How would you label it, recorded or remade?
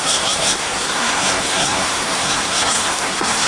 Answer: remade